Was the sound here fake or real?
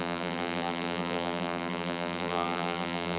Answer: fake